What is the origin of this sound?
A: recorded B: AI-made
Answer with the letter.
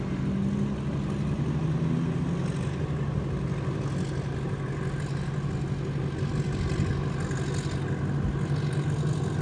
A